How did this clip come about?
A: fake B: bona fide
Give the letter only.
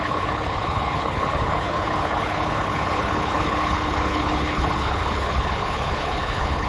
A